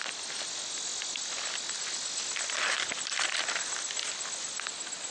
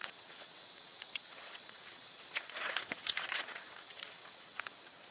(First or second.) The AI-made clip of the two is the second